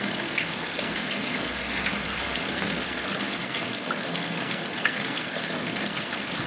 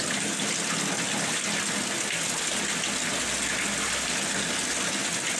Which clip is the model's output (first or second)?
first